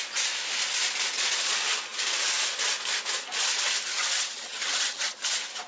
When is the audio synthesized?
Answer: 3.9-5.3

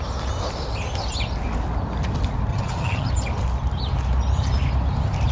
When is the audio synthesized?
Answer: 2.5-3.1

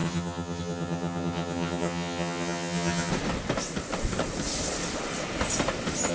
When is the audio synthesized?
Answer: 0.0-3.1